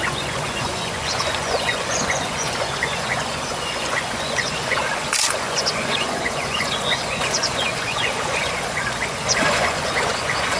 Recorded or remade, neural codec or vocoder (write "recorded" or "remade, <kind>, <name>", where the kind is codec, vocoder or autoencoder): remade, vocoder, Vocos